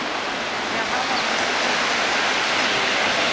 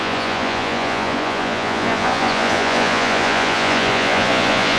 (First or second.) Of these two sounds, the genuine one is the first